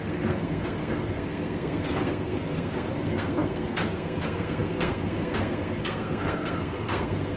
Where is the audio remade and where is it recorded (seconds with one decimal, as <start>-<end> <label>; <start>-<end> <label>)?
0.0-7.4 remade